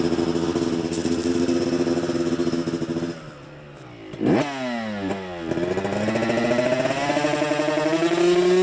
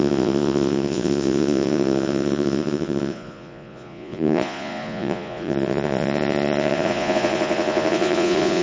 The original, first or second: first